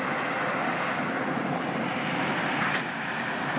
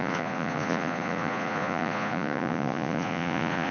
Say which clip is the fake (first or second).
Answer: second